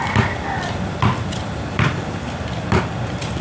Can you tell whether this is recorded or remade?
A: recorded